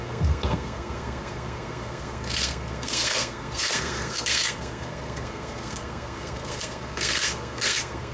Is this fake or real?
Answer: fake